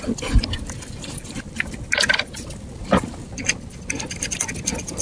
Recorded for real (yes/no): yes